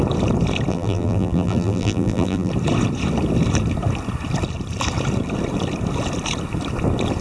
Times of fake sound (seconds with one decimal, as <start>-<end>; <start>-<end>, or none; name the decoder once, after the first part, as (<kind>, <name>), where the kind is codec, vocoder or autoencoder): 0.7-2.5 (vocoder, BigVGAN v2)